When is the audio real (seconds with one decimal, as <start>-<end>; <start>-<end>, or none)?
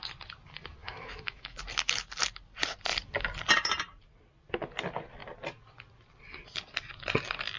0.0-0.8; 1.6-7.6